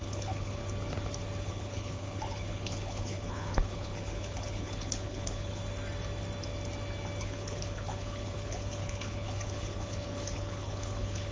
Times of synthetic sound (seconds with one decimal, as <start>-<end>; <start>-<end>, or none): 0.0-0.6; 1.4-5.6; 7.2-11.3

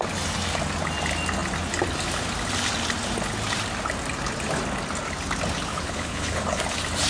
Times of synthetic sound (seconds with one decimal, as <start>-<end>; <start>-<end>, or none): 5.7-6.6

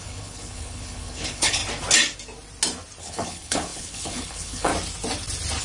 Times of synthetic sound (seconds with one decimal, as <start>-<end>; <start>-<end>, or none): 0.0-1.6; 3.0-4.7

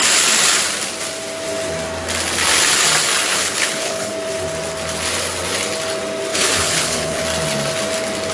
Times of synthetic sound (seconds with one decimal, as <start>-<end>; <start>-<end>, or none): 3.3-4.1; 6.3-7.2

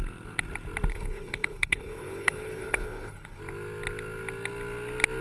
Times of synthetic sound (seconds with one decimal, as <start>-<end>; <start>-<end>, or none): 0.9-3.4

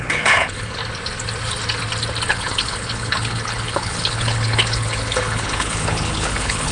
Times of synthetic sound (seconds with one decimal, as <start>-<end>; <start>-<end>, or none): 0.0-0.8; 2.3-6.7

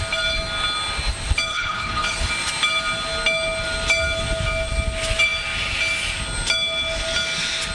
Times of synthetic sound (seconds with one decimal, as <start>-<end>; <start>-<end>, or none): 1.5-2.3